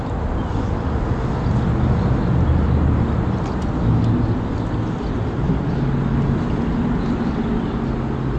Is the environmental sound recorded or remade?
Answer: recorded